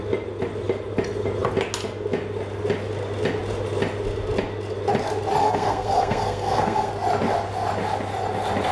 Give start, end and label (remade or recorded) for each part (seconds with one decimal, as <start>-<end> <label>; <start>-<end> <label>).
0.0-5.4 recorded; 5.4-6.9 remade; 6.9-8.7 recorded